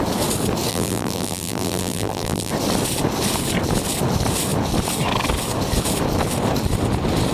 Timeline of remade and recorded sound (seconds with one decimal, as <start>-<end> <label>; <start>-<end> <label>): 0.0-0.7 recorded; 0.7-2.5 remade; 2.5-7.3 recorded